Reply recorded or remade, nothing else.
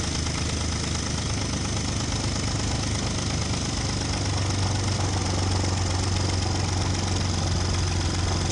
recorded